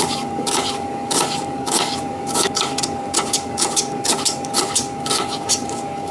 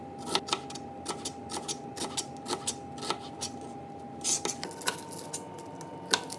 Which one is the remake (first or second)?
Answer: first